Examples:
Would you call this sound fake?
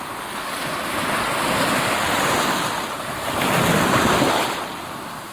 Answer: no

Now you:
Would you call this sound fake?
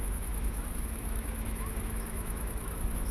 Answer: yes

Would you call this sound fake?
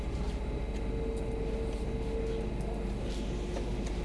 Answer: no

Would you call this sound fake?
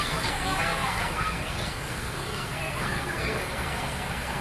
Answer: yes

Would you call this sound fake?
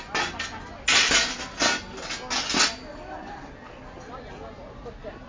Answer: no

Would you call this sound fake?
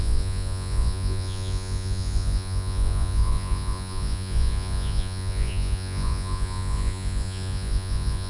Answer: yes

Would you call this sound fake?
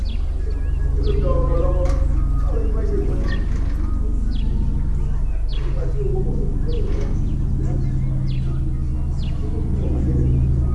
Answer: no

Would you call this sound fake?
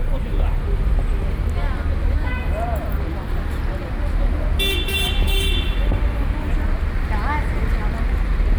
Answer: no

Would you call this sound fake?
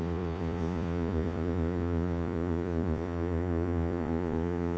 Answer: yes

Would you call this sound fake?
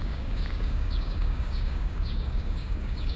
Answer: yes